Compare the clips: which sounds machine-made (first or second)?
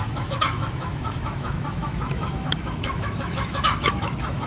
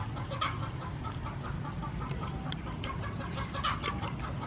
first